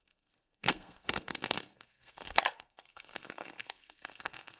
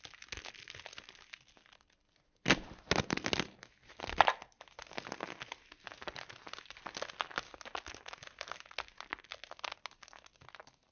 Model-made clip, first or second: first